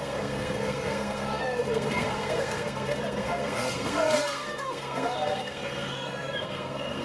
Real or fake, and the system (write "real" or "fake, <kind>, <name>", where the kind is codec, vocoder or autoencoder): fake, codec, SNAC